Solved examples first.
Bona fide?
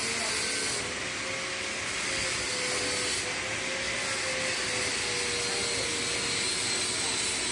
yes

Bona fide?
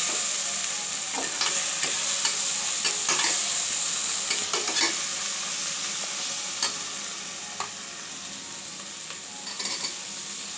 yes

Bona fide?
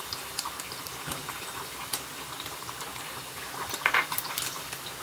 yes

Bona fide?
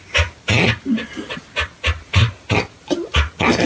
yes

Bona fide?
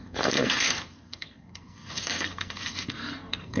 no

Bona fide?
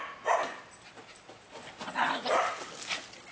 yes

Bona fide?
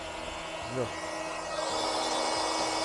yes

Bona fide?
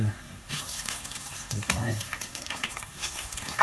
no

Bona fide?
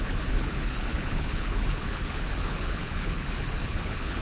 no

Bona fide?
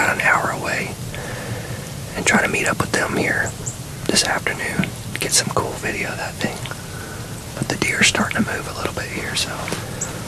no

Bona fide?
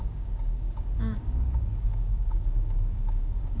no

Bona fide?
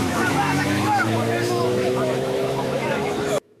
no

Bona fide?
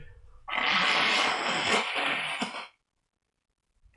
yes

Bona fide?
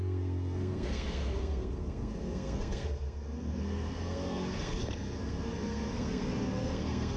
no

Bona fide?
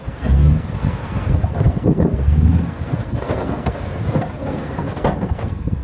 no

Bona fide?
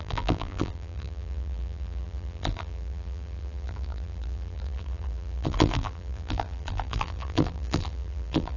no